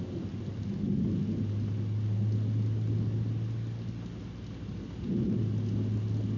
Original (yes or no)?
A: yes